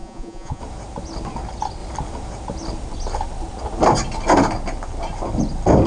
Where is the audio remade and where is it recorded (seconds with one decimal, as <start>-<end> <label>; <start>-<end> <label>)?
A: 0.0-0.6 remade; 0.6-5.9 recorded